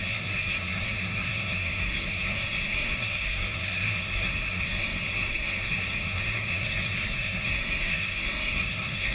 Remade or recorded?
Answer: remade